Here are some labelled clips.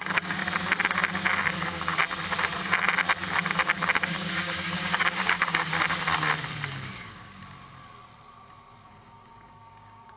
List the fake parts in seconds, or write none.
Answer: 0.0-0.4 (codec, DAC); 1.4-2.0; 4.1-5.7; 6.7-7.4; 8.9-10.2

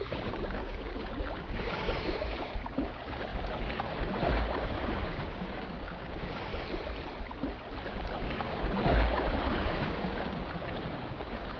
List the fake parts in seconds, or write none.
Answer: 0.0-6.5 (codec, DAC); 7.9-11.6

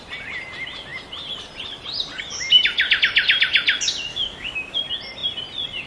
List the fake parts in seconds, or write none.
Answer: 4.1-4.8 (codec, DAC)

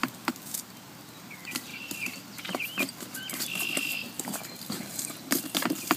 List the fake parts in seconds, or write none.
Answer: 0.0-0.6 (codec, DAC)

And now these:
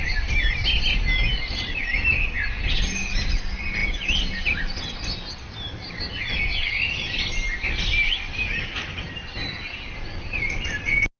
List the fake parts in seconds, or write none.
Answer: none